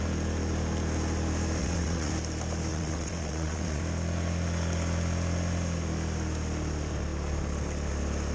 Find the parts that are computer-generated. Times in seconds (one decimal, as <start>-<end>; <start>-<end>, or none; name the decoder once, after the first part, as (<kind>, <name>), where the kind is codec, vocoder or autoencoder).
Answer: 1.6-2.1 (vocoder, WaveNeXt); 2.7-3.8